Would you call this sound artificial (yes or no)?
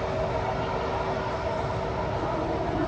no